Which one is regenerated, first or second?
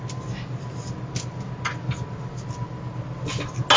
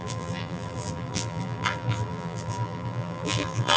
second